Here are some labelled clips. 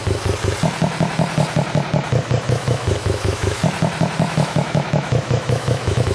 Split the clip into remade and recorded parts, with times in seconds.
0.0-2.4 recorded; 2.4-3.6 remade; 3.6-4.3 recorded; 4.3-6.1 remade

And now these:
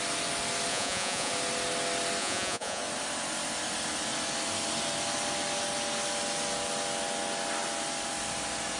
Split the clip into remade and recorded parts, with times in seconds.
0.0-0.7 recorded; 0.7-1.3 remade; 1.3-2.2 recorded; 2.2-2.8 remade; 2.8-8.8 recorded

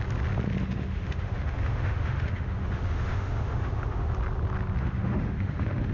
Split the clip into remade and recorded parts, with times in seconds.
0.0-0.6 recorded; 0.6-4.1 remade; 4.1-4.8 recorded; 4.8-5.9 remade

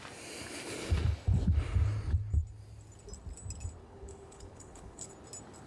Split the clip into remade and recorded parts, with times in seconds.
0.0-3.8 recorded; 3.8-5.1 remade; 5.1-5.7 recorded

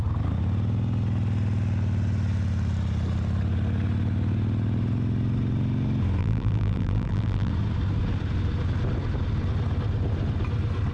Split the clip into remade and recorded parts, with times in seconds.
0.0-6.2 recorded; 6.2-7.5 remade; 7.5-10.9 recorded